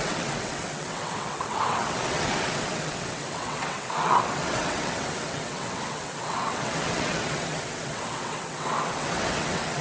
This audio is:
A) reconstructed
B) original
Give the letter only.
A